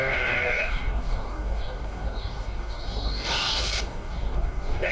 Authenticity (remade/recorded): remade